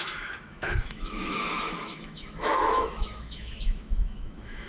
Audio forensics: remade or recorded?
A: remade